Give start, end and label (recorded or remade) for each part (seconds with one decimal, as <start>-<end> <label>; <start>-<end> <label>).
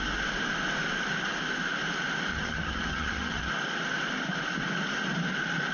0.0-2.3 recorded; 2.3-3.5 remade; 3.5-5.7 recorded